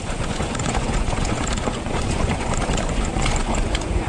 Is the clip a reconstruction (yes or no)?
yes